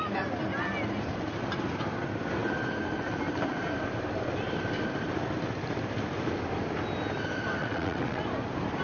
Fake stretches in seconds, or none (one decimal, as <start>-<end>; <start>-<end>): 7.6-8.2